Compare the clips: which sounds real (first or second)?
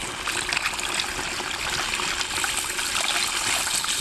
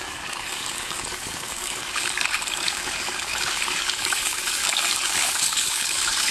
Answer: first